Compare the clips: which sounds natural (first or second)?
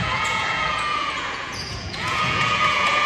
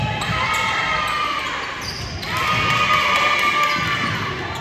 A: second